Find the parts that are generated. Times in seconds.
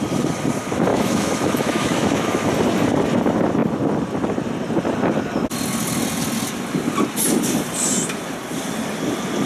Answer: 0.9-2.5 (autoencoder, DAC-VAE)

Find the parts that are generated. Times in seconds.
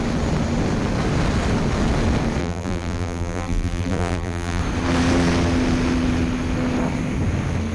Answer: 2.4-4.6 (vocoder, BigVGAN v2)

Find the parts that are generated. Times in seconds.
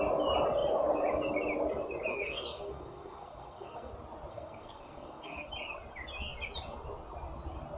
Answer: 2.1-3.9 (codec, SNAC); 4.3-5.5